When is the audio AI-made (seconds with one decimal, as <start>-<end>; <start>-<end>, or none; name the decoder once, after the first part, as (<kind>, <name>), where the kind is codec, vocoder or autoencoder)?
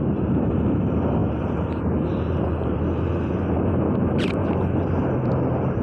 0.0-4.4 (vocoder, BigVGAN v2); 5.0-5.8